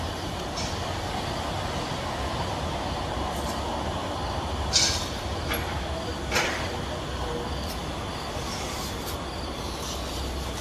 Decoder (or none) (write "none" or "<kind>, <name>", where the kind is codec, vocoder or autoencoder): none